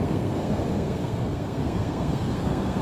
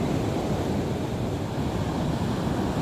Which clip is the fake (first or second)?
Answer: first